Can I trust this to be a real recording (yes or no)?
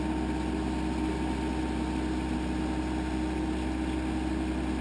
yes